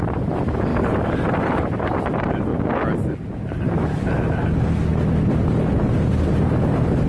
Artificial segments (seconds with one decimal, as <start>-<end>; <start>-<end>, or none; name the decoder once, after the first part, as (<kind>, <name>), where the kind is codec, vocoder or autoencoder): 0.0-2.5 (vocoder, BigVGAN v2); 3.4-4.8; 5.9-7.1